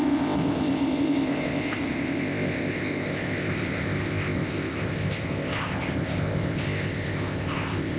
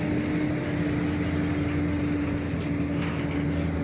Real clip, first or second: second